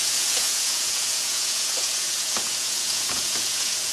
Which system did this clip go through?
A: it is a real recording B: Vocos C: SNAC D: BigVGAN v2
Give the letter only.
B